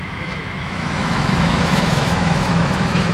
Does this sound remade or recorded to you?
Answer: remade